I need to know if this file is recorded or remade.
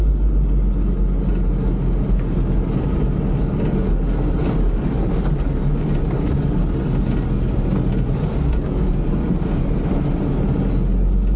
recorded